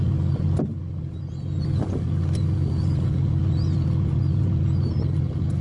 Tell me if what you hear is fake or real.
real